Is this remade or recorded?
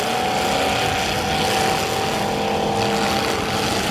recorded